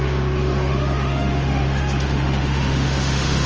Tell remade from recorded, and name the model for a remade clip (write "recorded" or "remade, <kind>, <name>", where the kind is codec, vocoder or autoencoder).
remade, autoencoder, DAC-VAE